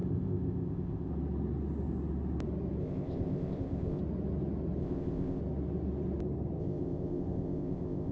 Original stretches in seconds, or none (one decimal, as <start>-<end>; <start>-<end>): 1.1-2.8; 4.0-4.8; 5.4-6.6